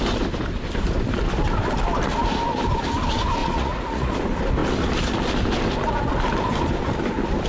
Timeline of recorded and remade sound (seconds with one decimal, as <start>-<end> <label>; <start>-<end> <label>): 0.0-3.4 recorded; 3.4-4.1 remade; 4.1-7.5 recorded